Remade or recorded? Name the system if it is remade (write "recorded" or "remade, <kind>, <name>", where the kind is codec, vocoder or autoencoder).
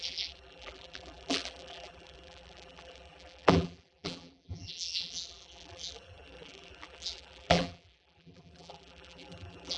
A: remade, vocoder, BigVGAN v2